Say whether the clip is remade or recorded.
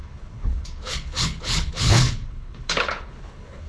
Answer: remade